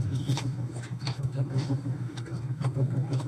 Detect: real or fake fake